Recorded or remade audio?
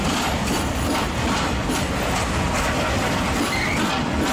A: recorded